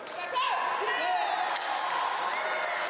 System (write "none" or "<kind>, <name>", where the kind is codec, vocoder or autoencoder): none